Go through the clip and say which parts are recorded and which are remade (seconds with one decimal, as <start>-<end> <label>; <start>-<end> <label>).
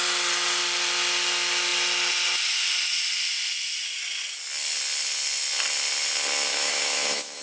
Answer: 0.0-6.5 recorded; 6.5-7.4 remade